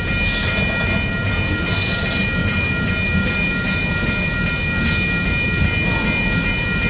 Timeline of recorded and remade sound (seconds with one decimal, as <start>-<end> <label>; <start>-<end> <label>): 0.0-6.9 recorded